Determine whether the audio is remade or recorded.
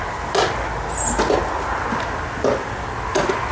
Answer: recorded